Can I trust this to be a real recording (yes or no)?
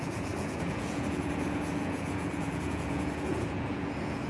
no